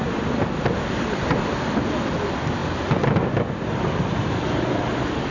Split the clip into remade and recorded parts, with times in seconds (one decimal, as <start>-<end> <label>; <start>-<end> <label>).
0.0-5.3 recorded